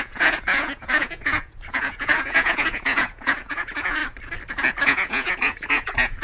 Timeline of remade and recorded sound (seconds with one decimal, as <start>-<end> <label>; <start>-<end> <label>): 0.0-4.0 remade; 4.0-4.8 recorded; 4.8-6.2 remade